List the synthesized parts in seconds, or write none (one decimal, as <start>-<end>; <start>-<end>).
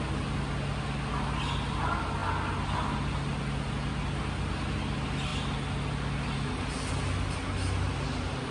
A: none